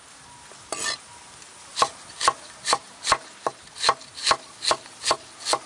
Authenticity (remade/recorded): recorded